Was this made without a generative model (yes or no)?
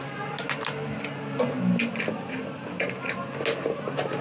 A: yes